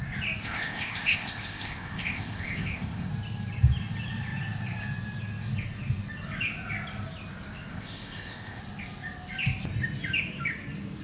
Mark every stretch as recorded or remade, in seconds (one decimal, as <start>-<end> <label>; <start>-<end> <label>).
0.0-0.4 recorded; 0.4-3.1 remade; 3.1-7.7 recorded; 7.7-8.6 remade; 8.6-11.0 recorded